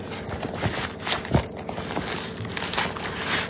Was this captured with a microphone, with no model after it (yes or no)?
yes